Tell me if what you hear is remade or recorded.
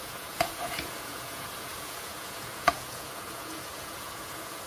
remade